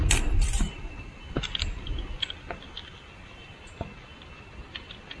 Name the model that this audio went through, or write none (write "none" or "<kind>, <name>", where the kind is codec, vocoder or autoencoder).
none